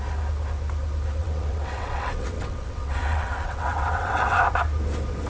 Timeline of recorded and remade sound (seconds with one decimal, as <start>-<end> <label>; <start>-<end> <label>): 0.0-1.2 recorded; 1.2-4.4 remade; 4.4-5.3 recorded